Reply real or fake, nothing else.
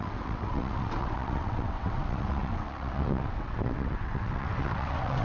fake